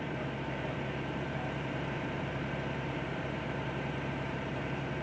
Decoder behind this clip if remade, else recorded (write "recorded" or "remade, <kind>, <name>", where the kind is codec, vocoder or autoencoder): remade, vocoder, BigVGAN v2